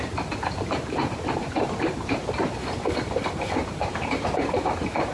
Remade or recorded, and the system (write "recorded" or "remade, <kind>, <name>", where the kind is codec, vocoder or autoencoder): remade, vocoder, BigVGAN v2